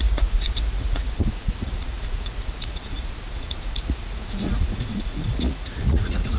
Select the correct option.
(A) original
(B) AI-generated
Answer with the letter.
B